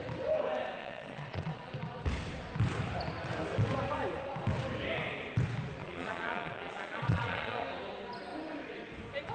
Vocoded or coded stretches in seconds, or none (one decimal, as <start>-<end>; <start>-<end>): 0.8-1.7; 5.8-7.6